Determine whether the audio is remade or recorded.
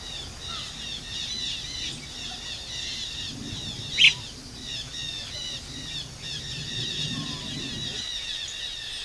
recorded